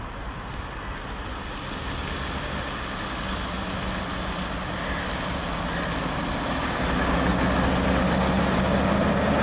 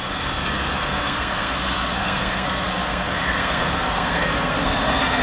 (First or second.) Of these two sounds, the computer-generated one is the second